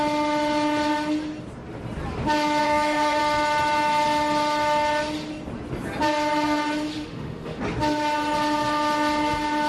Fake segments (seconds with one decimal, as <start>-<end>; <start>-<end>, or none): 2.6-3.2; 6.9-7.6